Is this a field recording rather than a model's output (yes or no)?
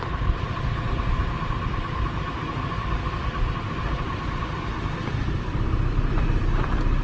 no